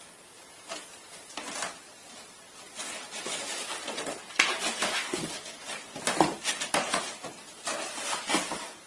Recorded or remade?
recorded